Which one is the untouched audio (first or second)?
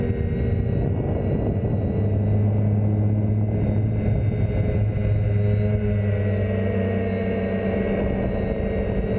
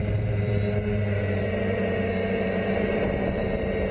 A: first